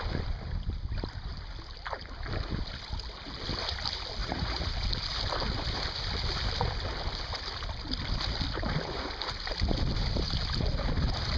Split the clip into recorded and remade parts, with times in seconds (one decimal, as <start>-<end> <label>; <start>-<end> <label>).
0.0-4.2 recorded; 4.2-4.7 remade; 4.7-11.4 recorded